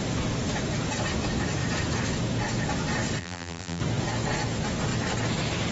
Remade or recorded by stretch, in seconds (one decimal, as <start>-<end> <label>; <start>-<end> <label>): 0.0-3.2 recorded; 3.2-3.8 remade; 3.8-5.7 recorded